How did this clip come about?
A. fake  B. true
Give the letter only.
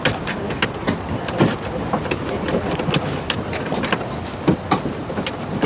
B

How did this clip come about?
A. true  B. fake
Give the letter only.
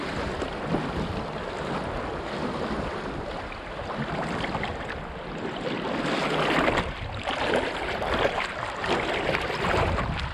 A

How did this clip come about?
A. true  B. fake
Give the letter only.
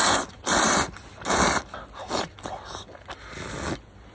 A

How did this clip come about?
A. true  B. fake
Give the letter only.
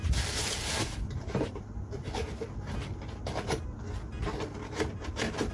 A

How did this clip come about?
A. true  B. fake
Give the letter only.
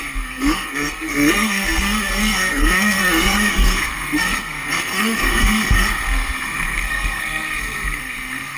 B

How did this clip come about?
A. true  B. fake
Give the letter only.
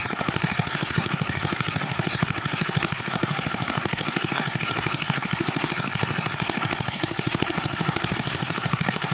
B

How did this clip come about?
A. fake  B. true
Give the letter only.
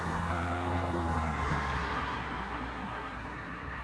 A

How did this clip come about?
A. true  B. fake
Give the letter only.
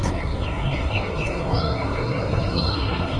B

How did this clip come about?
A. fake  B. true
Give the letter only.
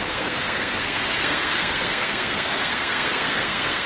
A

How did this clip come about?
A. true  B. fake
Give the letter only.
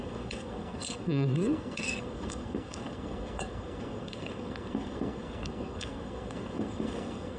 B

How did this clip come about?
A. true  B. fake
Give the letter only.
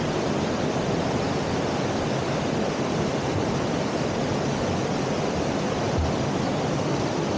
A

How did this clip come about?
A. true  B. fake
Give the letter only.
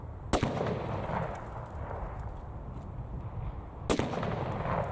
A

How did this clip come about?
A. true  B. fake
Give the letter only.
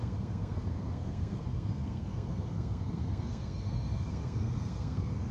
B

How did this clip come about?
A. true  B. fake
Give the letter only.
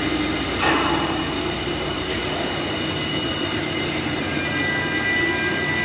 A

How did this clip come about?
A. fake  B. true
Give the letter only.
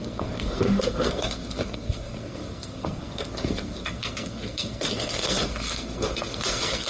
A